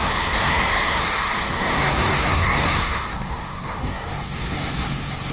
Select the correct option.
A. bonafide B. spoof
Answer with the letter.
B